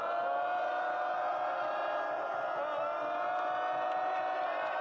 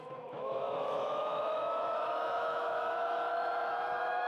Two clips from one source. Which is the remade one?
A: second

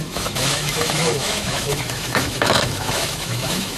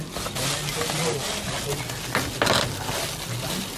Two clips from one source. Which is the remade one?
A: first